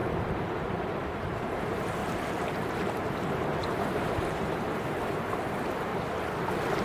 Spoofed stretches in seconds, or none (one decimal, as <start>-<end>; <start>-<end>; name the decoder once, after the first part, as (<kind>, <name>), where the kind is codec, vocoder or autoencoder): 0.0-5.9 (vocoder, BigVGAN v2)